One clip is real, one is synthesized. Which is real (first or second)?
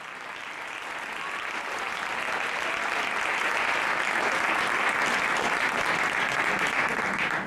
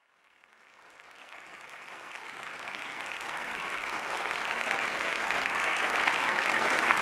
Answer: first